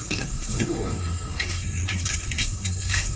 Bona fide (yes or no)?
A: no